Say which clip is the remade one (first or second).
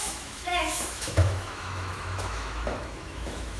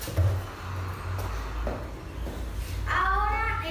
first